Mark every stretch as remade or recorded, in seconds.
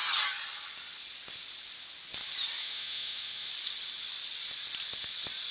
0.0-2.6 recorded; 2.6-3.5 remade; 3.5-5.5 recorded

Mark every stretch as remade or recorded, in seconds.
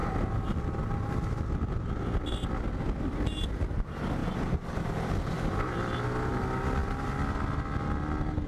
0.0-0.6 remade; 0.6-8.5 recorded